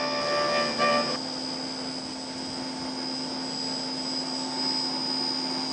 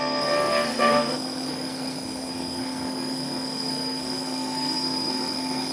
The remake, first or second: second